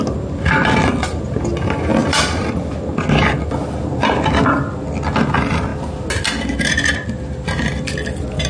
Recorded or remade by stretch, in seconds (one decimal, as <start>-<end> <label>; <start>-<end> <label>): 0.0-2.0 recorded; 2.0-2.6 remade; 2.6-8.5 recorded